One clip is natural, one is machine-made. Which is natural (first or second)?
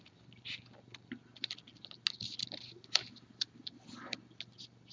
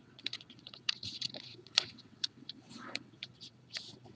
first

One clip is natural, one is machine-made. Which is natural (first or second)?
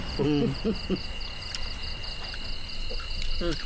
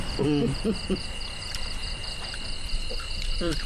first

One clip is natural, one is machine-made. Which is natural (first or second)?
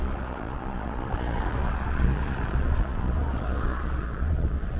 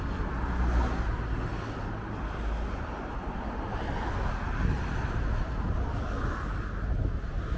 second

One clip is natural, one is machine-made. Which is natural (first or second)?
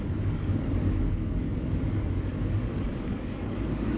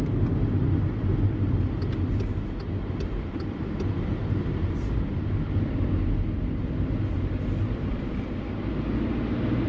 second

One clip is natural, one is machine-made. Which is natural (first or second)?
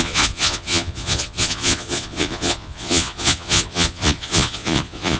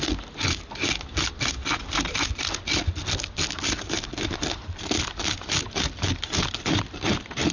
second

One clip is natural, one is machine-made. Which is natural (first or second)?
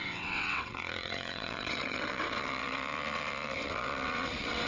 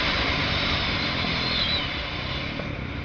second